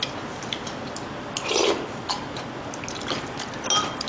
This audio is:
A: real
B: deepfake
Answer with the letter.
A